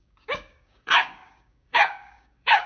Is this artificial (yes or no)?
yes